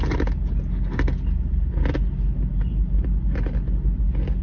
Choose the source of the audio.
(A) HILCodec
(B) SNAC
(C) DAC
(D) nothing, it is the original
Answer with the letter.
D